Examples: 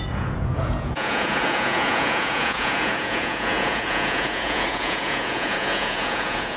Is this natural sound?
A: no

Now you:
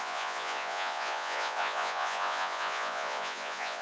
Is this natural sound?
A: no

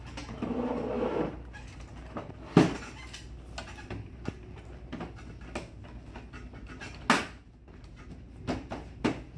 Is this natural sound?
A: yes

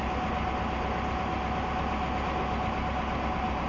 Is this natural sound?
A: yes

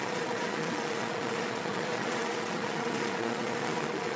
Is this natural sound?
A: no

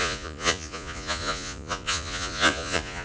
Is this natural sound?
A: no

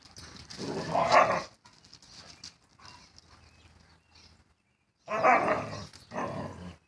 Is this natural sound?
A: yes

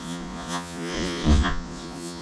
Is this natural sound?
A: no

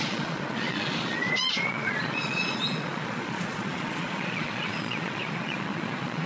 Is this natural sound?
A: no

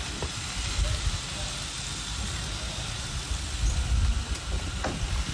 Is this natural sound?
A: yes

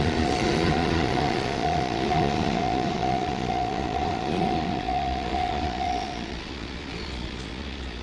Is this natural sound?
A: no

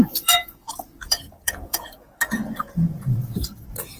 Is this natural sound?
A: no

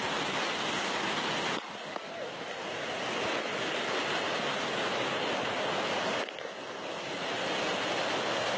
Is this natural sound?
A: yes